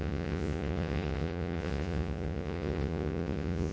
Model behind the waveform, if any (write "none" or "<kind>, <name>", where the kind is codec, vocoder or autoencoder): vocoder, Vocos